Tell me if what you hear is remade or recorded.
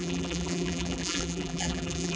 remade